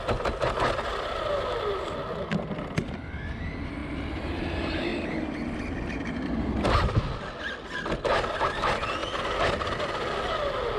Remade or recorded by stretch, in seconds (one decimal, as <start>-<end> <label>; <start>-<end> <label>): 0.0-3.8 recorded; 3.8-4.4 remade; 4.4-9.0 recorded; 9.0-9.9 remade; 9.9-10.8 recorded